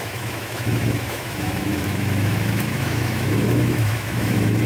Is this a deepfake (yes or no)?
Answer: yes